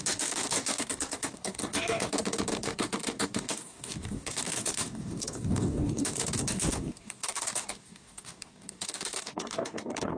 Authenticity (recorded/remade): remade